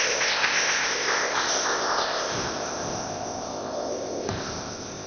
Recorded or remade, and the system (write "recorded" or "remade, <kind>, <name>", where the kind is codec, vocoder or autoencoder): remade, codec, ZipCodec